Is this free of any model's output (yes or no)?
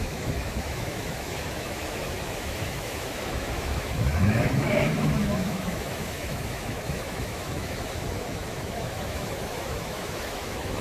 no